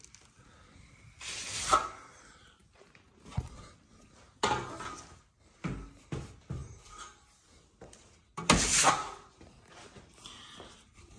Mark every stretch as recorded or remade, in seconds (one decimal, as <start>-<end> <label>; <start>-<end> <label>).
0.0-11.2 recorded